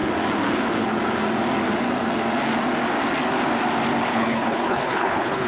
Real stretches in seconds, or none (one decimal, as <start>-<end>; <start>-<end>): 0.0-4.1